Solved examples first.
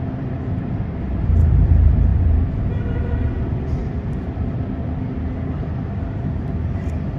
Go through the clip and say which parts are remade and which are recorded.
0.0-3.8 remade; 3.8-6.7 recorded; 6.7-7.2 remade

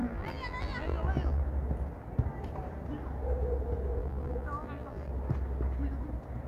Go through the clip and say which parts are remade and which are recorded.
0.0-1.4 remade; 1.4-4.0 recorded; 4.0-5.1 remade; 5.1-6.5 recorded

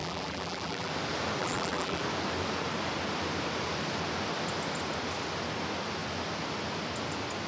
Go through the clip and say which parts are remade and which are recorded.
0.0-0.9 remade; 0.9-1.4 recorded; 1.4-2.0 remade; 2.0-7.5 recorded

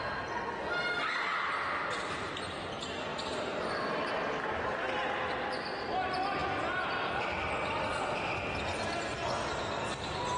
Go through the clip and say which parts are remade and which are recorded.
0.0-3.1 recorded; 3.1-5.9 remade; 5.9-10.4 recorded